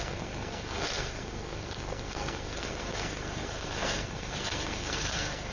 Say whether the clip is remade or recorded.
remade